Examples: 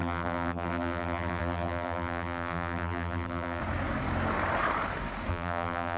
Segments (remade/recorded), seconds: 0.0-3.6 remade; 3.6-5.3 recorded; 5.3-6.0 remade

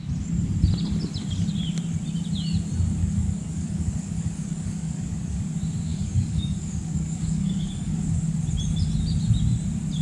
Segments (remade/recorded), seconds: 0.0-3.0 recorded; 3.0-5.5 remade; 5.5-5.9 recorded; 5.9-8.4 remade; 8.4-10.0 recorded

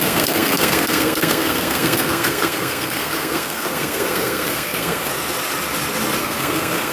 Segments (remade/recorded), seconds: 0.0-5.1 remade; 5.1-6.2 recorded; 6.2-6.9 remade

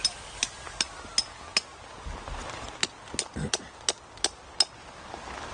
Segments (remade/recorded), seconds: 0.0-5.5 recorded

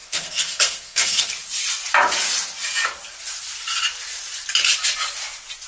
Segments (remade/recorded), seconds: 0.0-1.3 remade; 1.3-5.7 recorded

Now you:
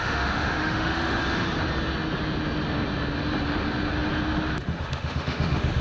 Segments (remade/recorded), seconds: 0.0-1.2 remade; 1.2-4.6 recorded; 4.6-5.8 remade